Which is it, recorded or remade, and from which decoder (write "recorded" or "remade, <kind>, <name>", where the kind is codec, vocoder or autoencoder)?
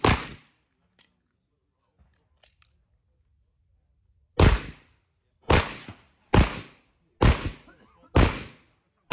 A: recorded